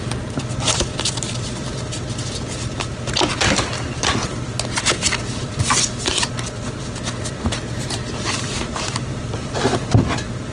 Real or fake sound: real